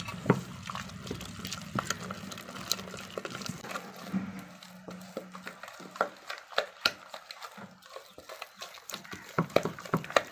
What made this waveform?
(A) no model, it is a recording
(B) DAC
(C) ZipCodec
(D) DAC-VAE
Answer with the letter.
A